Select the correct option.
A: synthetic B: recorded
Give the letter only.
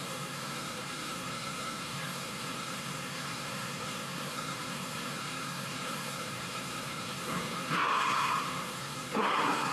A